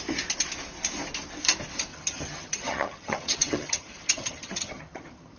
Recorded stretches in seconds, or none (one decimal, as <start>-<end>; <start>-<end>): 0.0-1.9